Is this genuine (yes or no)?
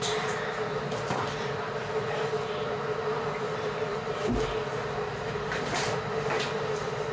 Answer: no